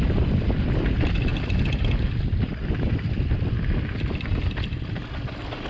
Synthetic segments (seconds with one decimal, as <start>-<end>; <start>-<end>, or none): none